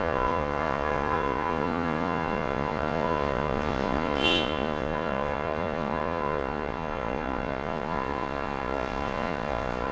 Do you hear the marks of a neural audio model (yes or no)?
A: yes